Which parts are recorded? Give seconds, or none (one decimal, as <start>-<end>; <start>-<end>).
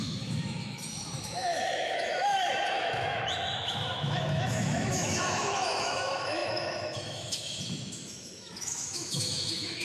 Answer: none